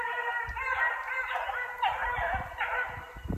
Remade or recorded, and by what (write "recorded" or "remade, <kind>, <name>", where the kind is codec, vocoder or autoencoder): recorded